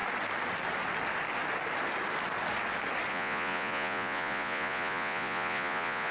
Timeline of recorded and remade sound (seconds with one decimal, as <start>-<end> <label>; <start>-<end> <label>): 0.0-3.1 recorded; 3.1-6.1 remade